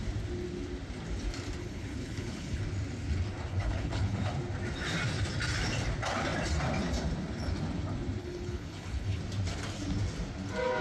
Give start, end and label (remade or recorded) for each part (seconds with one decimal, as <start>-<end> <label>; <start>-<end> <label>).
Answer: 0.0-1.6 recorded; 1.6-2.6 remade; 2.6-3.5 recorded; 3.5-4.3 remade; 4.3-8.2 recorded; 8.2-9.2 remade; 9.2-10.8 recorded